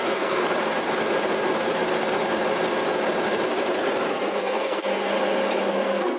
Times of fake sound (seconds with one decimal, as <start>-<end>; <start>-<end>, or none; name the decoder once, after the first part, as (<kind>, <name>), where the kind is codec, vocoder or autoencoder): 0.0-0.4 (codec, SNAC); 4.1-5.1; 5.7-6.2